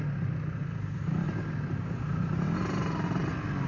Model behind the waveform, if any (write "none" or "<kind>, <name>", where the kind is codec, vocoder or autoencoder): none